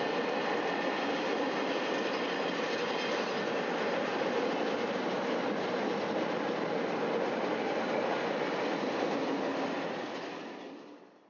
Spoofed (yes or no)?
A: no